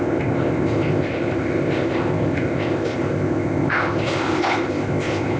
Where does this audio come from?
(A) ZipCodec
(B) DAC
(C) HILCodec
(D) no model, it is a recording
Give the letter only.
A